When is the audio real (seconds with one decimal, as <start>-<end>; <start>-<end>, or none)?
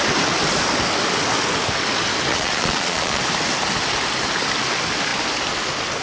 0.0-2.3; 3.2-6.0